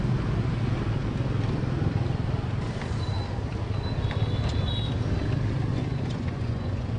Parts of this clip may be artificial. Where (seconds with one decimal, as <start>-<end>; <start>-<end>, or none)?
5.7-7.0